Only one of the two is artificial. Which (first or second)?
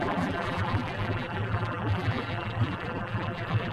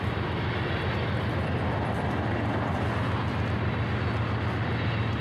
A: first